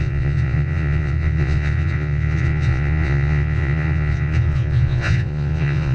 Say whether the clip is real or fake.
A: fake